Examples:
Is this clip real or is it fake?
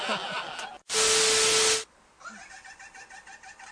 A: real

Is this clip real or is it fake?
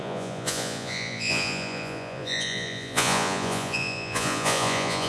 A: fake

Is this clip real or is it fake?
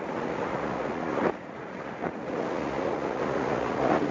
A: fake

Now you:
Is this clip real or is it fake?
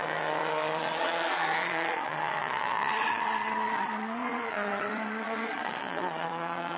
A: fake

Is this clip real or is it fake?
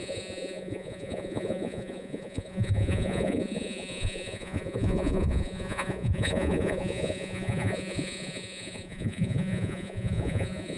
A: fake